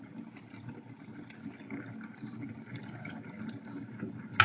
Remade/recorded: recorded